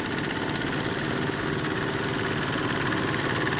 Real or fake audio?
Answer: real